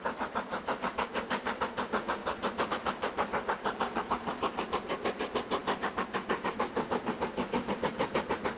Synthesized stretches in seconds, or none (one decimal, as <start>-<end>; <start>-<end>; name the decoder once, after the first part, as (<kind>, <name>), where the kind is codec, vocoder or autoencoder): 0.0-8.6 (vocoder, BigVGAN v2)